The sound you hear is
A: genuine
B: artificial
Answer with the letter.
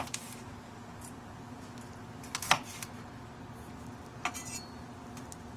A